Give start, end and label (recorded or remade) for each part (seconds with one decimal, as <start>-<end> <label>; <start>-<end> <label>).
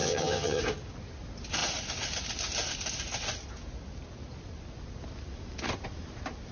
0.0-0.6 remade; 0.6-6.5 recorded